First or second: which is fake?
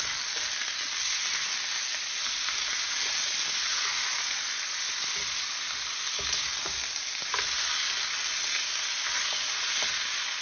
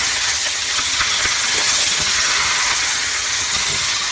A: second